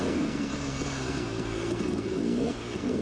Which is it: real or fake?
fake